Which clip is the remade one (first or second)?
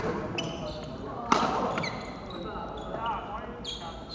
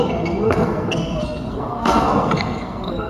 second